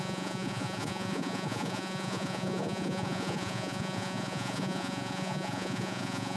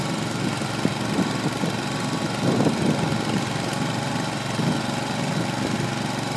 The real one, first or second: second